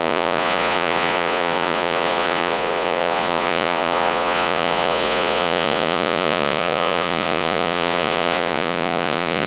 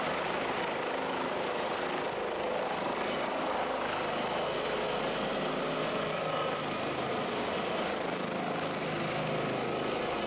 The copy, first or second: first